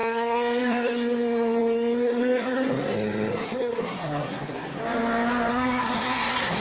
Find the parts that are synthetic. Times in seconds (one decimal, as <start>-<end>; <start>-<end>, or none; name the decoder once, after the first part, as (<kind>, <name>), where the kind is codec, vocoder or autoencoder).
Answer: 0.0-4.8 (codec, SNAC); 5.5-6.6